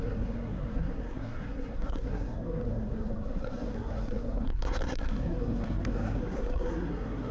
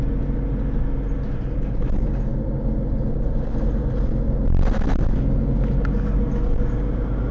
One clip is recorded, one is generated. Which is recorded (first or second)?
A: second